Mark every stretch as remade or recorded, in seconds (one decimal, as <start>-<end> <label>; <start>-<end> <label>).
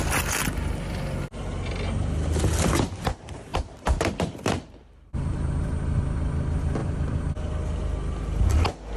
0.0-3.5 recorded; 3.5-5.6 remade; 5.6-6.8 recorded; 6.8-7.5 remade; 7.5-9.0 recorded